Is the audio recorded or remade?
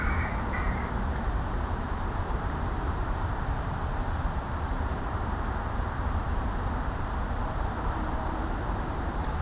remade